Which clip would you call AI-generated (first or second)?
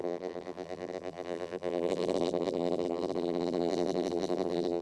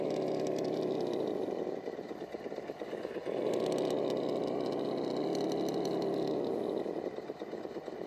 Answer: first